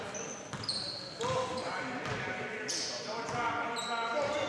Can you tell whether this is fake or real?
real